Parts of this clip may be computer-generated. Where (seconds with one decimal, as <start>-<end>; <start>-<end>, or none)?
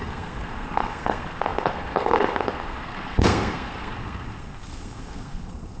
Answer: 0.0-5.8